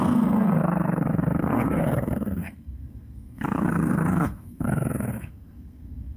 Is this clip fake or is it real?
fake